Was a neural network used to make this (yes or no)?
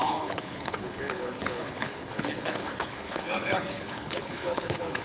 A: yes